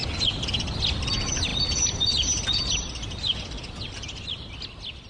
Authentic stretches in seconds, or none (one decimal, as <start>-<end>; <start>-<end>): 0.0-5.1